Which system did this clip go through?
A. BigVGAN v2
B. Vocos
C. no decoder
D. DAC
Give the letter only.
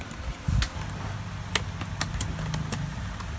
C